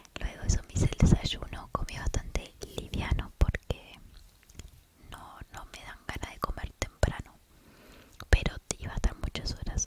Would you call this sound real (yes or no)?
yes